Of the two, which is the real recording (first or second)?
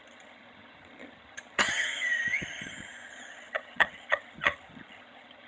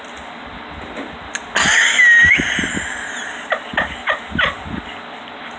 second